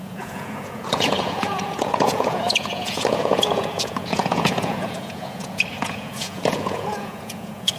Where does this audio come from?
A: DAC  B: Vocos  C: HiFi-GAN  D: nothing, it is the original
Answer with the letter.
B